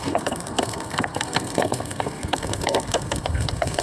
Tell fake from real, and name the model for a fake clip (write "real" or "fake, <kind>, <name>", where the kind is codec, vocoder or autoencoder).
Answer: fake, codec, SNAC